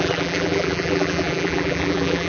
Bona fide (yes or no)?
no